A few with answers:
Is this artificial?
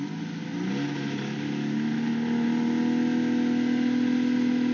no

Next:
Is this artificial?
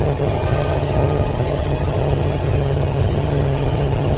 yes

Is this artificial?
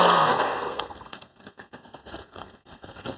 yes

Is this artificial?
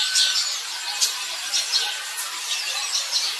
no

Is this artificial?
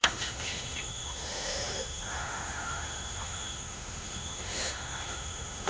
yes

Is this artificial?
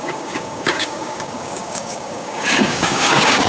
yes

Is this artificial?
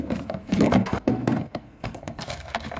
yes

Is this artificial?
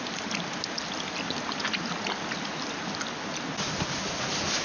no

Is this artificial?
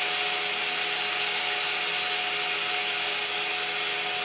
no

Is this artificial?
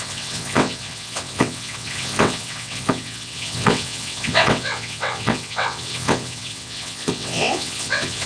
yes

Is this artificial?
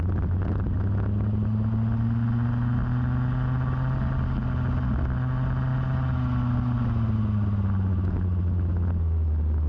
no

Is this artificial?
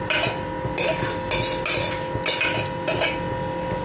no